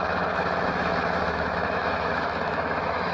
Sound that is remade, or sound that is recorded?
remade